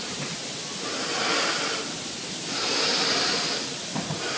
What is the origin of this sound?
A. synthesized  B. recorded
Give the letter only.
B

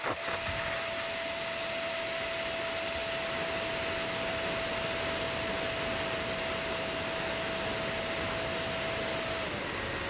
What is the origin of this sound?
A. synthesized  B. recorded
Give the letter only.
B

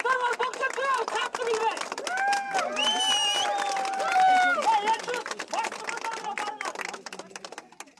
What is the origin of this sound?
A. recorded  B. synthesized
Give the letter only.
A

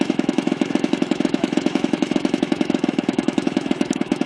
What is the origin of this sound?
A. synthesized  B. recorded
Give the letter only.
A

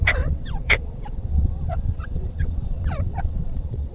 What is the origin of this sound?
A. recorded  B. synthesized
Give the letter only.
B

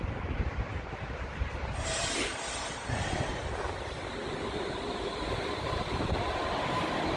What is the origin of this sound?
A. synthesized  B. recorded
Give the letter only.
B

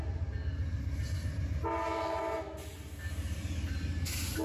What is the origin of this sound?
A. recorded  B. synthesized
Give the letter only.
A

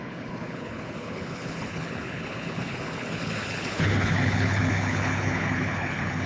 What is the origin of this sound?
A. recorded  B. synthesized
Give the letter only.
B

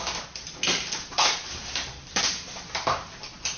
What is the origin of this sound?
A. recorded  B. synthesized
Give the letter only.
A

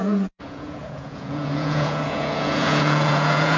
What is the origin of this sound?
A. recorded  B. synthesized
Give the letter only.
B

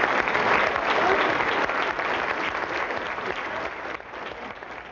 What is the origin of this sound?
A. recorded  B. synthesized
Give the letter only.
A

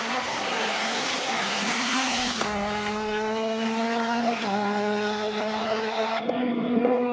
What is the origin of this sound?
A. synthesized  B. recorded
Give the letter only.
A